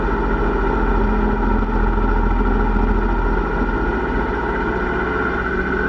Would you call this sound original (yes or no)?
yes